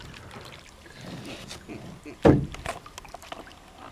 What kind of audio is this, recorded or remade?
recorded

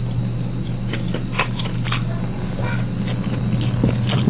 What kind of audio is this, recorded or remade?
recorded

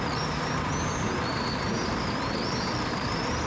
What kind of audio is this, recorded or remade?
recorded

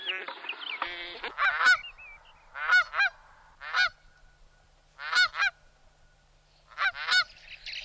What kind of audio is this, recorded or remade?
recorded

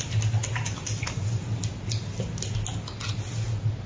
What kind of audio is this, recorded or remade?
recorded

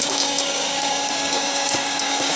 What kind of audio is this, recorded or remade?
remade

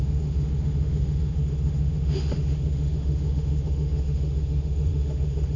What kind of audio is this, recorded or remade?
remade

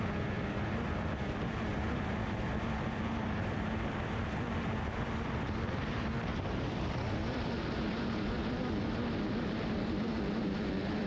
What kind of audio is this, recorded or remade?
remade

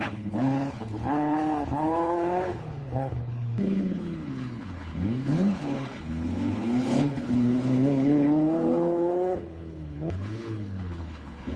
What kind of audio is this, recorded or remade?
remade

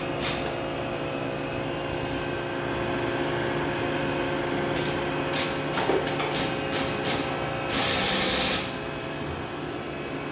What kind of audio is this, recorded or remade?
recorded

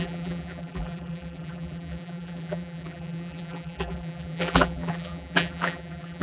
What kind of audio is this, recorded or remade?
remade